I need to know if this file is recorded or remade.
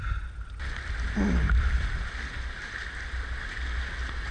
recorded